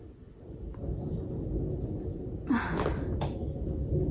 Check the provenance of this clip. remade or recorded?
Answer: recorded